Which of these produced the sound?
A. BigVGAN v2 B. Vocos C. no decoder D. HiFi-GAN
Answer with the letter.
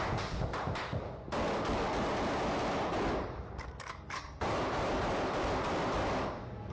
C